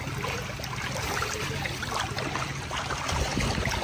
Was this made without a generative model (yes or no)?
yes